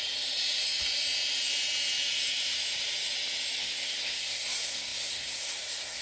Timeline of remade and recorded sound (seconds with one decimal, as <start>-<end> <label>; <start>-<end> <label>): 0.0-3.6 recorded; 3.6-6.0 remade